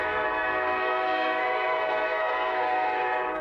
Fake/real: fake